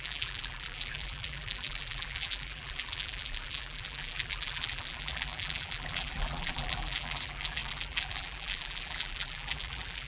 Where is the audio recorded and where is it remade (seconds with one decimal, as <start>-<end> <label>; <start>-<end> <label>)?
0.0-10.1 remade